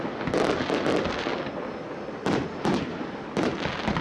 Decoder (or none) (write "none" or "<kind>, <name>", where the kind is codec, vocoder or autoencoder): none